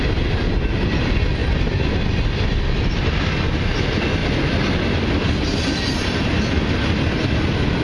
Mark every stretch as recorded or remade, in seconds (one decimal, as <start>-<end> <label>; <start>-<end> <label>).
0.0-7.8 recorded